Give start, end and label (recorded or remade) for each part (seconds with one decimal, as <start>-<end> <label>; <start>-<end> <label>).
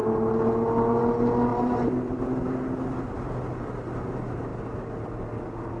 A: 0.0-1.5 recorded; 1.5-3.1 remade; 3.1-5.8 recorded